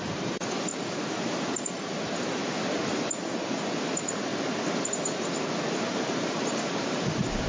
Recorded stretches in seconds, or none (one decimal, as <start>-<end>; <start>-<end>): 0.0-0.7; 1.8-7.5